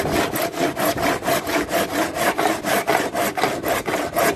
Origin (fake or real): real